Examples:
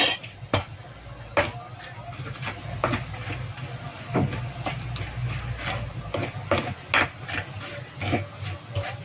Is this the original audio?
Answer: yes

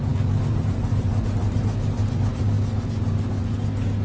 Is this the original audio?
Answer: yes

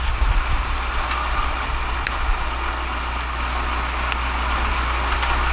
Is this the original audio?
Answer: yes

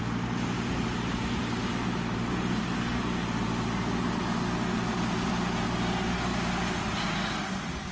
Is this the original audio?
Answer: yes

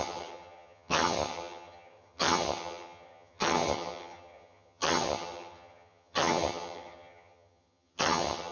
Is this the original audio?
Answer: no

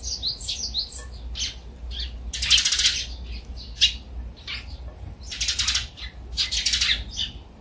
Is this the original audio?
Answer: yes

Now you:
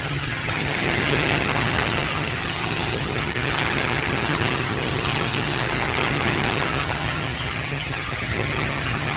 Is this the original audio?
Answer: no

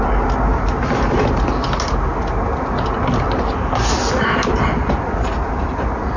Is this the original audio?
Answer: yes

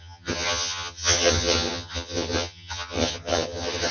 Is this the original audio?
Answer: no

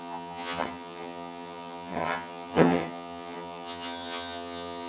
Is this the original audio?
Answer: no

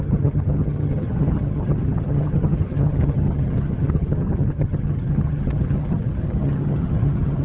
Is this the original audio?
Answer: no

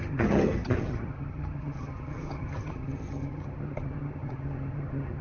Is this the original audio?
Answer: no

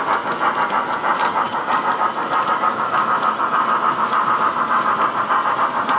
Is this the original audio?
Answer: yes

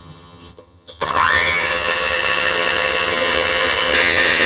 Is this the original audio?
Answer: no